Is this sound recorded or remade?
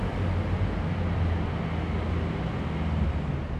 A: recorded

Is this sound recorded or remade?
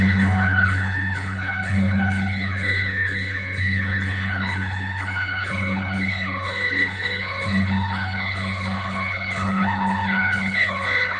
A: remade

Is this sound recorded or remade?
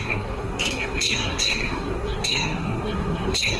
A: remade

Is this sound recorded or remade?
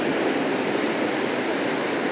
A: recorded